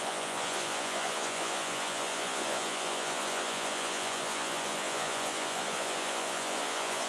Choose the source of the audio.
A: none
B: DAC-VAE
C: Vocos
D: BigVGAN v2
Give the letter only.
C